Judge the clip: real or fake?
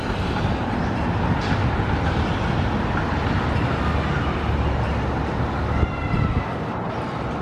real